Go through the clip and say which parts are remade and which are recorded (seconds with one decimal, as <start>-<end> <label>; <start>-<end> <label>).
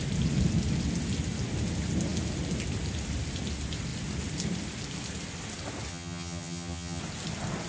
0.0-5.9 recorded; 5.9-7.0 remade; 7.0-7.7 recorded